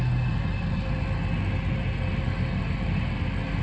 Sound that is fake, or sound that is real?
real